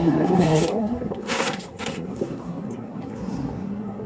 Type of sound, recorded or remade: remade